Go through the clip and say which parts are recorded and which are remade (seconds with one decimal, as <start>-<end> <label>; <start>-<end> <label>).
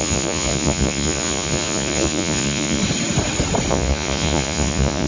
0.0-2.8 remade; 2.8-3.7 recorded; 3.7-5.1 remade